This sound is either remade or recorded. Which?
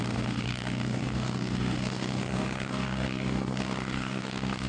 remade